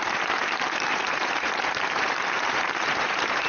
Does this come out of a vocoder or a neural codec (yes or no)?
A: yes